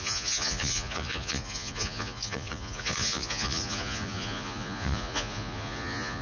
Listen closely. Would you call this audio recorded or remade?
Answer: remade